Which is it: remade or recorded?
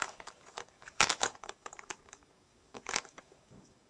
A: remade